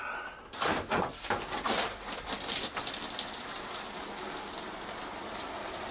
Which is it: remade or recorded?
recorded